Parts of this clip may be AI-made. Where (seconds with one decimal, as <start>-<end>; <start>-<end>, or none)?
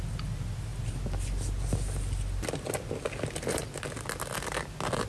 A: none